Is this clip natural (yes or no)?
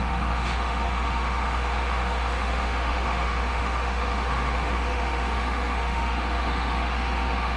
no